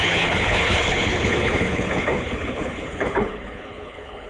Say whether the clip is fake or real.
fake